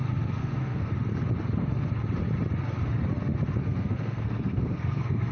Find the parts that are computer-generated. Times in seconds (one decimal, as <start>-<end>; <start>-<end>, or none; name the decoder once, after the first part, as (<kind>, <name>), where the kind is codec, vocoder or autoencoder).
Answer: 0.4-0.9 (codec, SNAC); 3.6-5.3